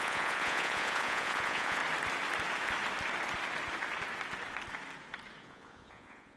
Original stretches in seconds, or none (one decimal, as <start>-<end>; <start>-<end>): 1.8-5.4